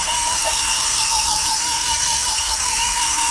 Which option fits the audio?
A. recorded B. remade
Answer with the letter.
B